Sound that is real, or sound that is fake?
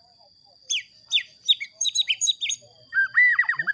fake